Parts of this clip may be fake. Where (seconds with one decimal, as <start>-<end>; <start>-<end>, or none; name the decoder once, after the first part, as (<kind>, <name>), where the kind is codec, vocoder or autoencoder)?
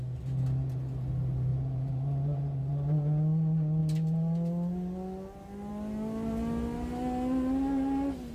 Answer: none